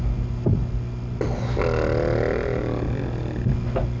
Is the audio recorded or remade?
recorded